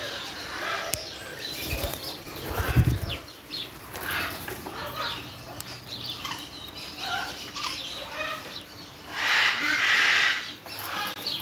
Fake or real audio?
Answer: fake